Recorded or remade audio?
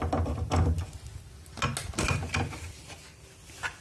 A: recorded